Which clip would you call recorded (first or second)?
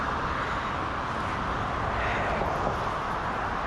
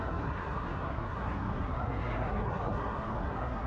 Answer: first